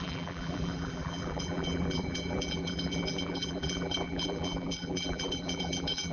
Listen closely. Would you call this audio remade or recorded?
remade